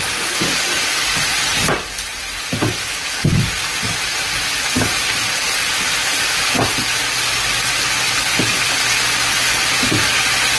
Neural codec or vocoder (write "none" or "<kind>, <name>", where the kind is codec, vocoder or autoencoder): none